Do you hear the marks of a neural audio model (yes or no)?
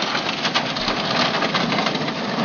yes